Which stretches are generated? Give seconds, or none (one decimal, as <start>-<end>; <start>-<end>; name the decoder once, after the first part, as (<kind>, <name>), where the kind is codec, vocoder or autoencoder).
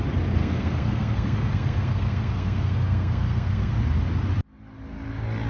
0.4-3.7 (codec, SNAC)